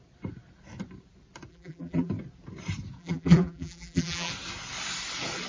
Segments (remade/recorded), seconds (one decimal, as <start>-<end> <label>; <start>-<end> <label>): 0.0-1.5 recorded; 1.5-2.1 remade; 2.1-3.0 recorded; 3.0-4.3 remade; 4.3-5.5 recorded